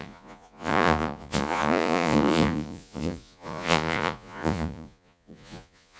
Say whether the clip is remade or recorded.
remade